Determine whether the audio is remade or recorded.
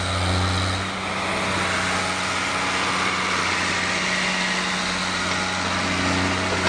recorded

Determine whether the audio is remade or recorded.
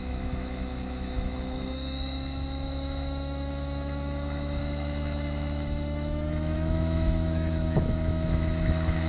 remade